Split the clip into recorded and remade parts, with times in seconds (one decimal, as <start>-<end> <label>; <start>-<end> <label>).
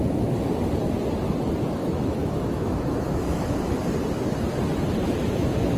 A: 0.0-1.8 recorded; 1.8-3.8 remade; 3.8-5.0 recorded; 5.0-5.8 remade